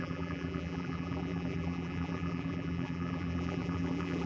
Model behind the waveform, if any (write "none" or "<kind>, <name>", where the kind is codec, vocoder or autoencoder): vocoder, BigVGAN v2